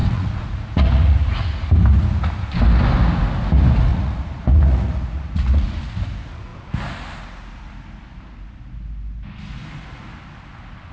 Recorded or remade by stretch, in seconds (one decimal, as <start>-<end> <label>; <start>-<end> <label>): 0.0-1.7 remade; 1.7-3.9 recorded; 3.9-5.8 remade; 5.8-10.9 recorded